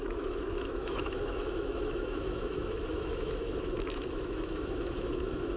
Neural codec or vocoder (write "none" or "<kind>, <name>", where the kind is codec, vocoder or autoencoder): autoencoder, DAC-VAE